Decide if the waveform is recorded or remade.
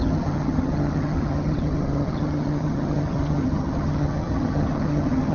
remade